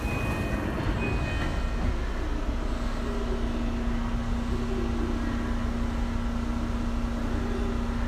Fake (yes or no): no